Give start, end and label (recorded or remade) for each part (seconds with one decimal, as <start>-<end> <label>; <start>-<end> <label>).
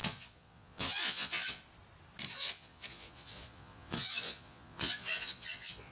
0.0-1.6 remade; 1.6-2.3 recorded; 2.3-5.9 remade